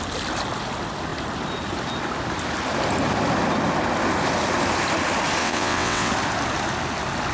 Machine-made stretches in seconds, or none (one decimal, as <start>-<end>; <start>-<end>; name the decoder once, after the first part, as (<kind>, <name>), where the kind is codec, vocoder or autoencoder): 5.4-6.1 (vocoder, WaveNeXt)